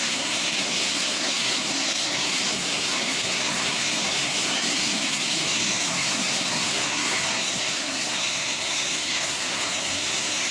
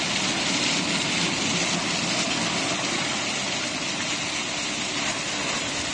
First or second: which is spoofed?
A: first